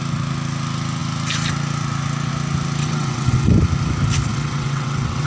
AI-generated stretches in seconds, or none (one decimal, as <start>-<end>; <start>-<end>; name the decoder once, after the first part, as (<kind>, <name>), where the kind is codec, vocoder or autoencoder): 2.8-3.5 (vocoder, WaveNeXt); 4.3-5.3